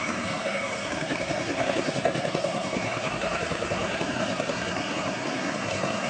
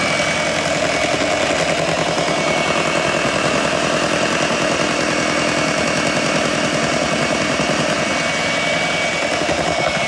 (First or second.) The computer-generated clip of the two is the first